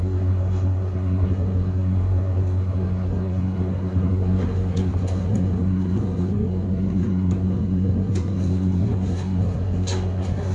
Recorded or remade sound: remade